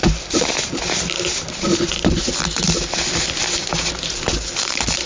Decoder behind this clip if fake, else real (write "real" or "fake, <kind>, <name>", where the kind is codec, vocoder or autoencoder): real